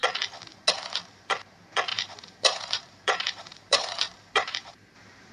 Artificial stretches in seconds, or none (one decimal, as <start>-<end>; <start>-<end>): 1.9-5.3